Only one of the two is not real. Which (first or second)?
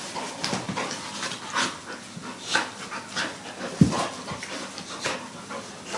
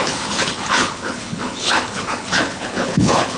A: second